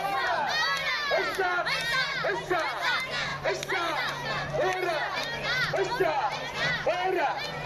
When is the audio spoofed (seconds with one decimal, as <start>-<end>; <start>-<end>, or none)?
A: none